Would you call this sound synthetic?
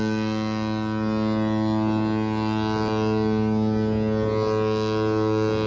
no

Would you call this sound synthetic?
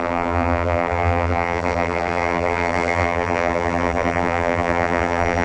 yes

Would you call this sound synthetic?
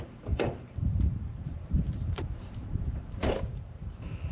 yes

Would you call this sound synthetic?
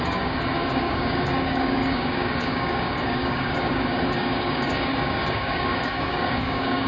yes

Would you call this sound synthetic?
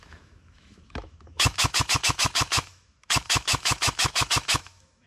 yes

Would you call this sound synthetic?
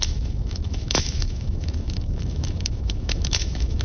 yes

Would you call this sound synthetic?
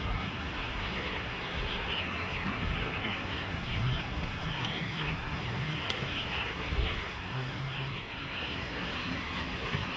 yes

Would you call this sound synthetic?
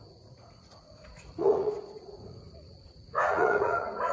yes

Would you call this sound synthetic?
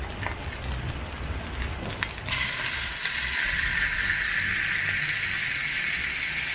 no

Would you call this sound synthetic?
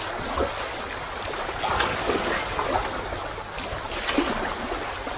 no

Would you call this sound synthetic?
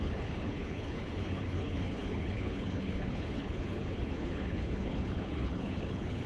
yes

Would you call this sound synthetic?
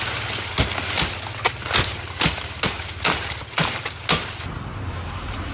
no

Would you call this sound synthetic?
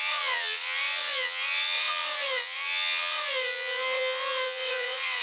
yes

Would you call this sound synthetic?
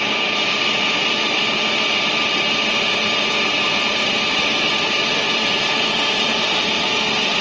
no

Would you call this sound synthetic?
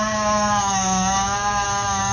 yes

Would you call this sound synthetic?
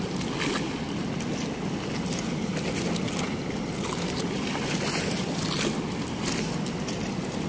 no